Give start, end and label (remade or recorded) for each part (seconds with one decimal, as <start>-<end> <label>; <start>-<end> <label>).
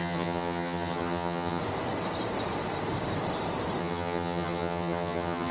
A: 0.0-1.6 remade; 1.6-3.8 recorded; 3.8-5.5 remade